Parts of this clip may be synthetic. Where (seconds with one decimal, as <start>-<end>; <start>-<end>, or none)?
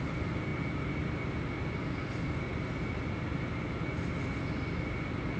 none